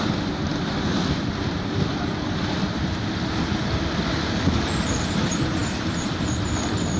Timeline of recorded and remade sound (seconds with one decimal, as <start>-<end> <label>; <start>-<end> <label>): 0.0-0.5 remade; 0.5-4.3 recorded; 4.3-7.0 remade